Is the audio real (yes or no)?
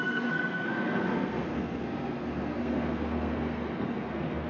no